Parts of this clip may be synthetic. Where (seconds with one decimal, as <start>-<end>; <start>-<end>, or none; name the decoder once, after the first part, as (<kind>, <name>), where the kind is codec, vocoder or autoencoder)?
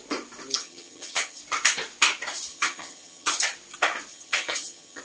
0.6-1.4 (vocoder, HiFi-GAN); 2.5-3.3; 4.1-5.0